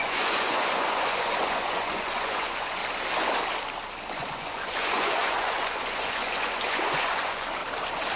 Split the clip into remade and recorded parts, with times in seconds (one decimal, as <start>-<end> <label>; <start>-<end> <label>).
0.0-2.8 remade; 2.8-4.1 recorded; 4.1-7.6 remade; 7.6-8.2 recorded